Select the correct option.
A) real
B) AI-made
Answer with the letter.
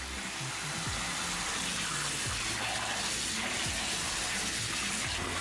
A